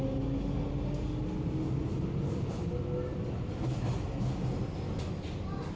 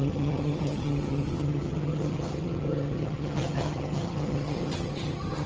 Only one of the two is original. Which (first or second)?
first